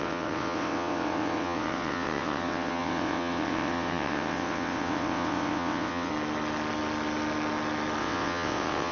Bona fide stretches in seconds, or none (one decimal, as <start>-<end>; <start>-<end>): 6.1-8.0

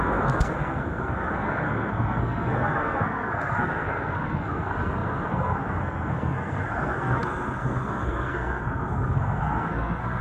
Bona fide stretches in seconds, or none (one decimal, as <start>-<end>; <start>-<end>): none